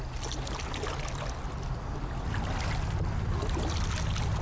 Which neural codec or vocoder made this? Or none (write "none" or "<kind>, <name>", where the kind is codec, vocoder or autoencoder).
none